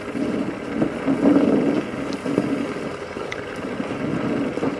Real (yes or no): yes